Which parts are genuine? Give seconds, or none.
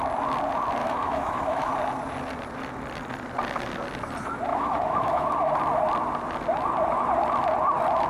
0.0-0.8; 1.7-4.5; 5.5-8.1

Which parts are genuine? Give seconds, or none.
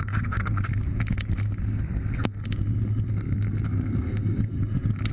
0.7-1.6; 2.4-3.1; 4.5-5.1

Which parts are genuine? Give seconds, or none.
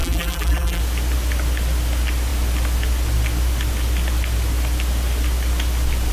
0.8-6.1